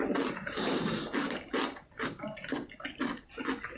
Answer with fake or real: real